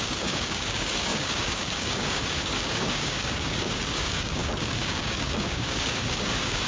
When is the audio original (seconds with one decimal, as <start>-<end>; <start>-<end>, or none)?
none